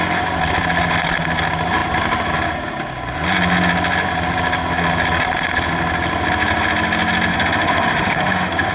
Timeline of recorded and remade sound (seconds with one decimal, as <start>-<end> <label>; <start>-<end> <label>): 0.0-7.3 recorded; 7.3-8.7 remade